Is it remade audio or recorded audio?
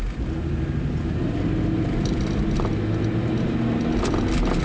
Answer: recorded